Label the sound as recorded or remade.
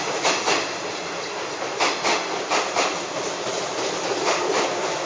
recorded